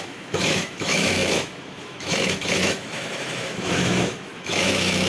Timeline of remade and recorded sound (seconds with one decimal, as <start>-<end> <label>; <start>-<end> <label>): 0.0-5.1 remade